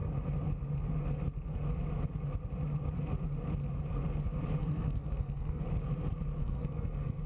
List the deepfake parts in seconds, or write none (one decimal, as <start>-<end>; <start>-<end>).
4.6-5.6; 6.4-7.3